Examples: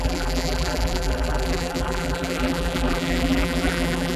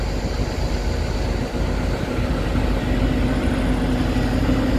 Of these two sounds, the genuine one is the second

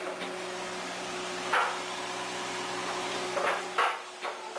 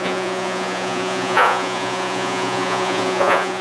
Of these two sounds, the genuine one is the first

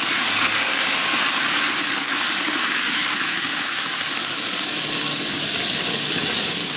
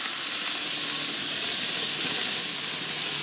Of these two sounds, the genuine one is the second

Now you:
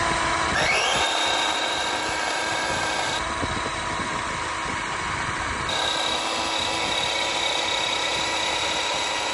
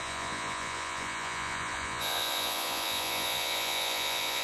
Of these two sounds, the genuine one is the first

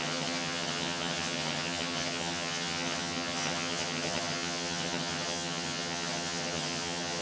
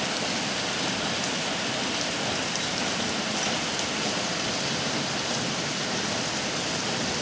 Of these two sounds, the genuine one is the second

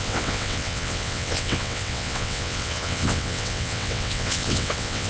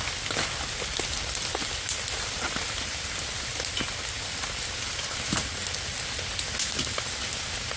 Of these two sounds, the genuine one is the second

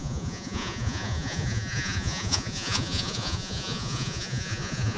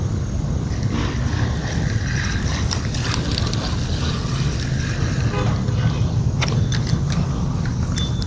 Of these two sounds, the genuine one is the second